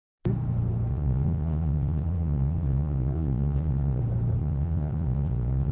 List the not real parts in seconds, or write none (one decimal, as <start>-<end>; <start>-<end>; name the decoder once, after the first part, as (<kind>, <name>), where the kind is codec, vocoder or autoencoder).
0.9-4.0 (vocoder, Vocos); 4.4-5.7